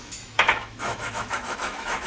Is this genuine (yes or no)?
no